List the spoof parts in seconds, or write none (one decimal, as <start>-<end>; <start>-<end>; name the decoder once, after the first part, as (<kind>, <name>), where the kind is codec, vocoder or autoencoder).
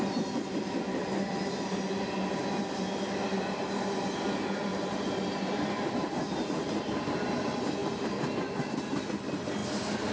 none